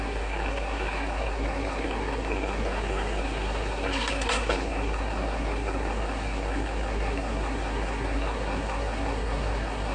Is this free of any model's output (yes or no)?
no